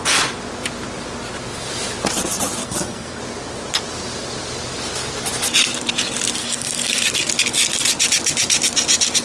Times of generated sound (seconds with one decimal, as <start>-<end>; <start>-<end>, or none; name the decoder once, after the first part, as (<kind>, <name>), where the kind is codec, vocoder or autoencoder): 2.6-3.2 (codec, SNAC); 6.4-7.3